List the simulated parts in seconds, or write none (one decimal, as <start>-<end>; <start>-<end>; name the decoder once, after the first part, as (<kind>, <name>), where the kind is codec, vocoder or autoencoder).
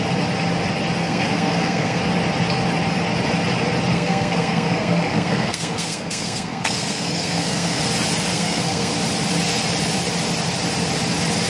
1.0-2.0 (codec, SNAC); 3.9-7.8; 8.3-8.9